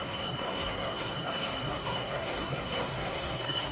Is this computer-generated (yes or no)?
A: yes